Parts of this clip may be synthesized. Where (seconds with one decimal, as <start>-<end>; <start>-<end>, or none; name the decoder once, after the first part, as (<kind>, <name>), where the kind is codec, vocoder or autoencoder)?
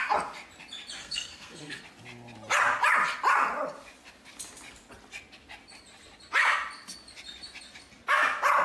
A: 1.0-1.8 (codec, SNAC)